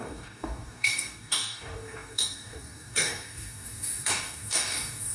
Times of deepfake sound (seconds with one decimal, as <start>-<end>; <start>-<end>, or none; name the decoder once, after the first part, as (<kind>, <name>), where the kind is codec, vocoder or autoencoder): 0.0-5.1 (codec, DAC)